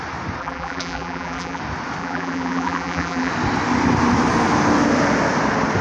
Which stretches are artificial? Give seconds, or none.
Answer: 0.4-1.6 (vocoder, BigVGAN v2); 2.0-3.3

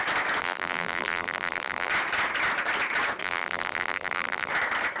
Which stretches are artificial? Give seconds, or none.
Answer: 0.4-1.9 (vocoder, BigVGAN v2); 3.2-4.5

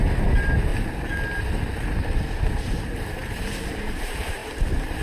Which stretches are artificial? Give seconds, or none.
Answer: 0.0-0.7 (vocoder, BigVGAN v2); 2.3-5.0

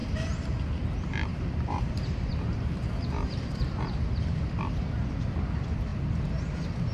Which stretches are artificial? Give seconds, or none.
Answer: 0.0-0.5 (vocoder, BigVGAN v2); 1.3-4.1

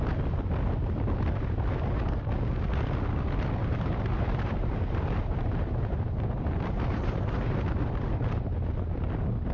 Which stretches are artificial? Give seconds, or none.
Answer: 3.6-8.1 (vocoder, BigVGAN v2)

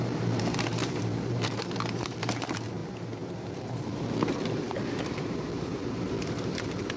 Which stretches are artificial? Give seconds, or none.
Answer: 0.0-2.8 (vocoder, BigVGAN v2); 3.5-7.0

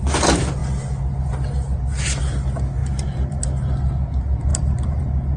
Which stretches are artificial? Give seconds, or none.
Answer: 2.8-3.4 (vocoder, BigVGAN v2); 4.5-5.0